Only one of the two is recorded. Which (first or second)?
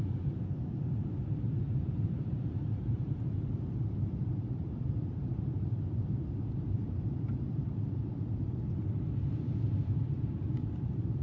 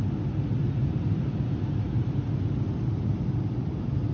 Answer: second